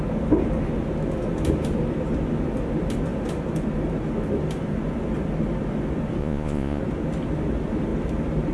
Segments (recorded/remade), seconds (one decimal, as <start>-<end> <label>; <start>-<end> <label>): 0.0-6.2 recorded; 6.2-6.8 remade; 6.8-8.5 recorded